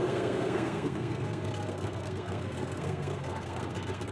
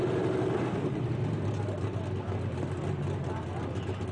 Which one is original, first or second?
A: second